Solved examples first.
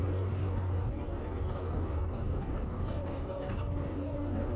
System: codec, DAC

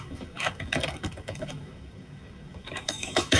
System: codec, DAC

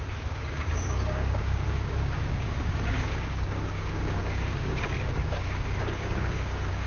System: codec, DAC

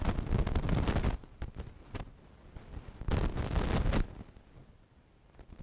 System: none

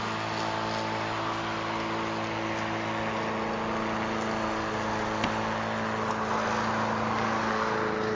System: none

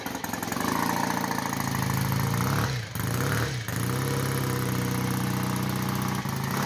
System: none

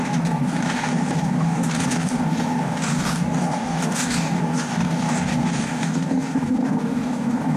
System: codec, DAC